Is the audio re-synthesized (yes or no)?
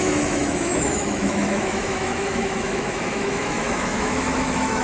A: yes